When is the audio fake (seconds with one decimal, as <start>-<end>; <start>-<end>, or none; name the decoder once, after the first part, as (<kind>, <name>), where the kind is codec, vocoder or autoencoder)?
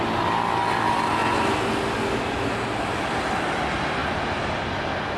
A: none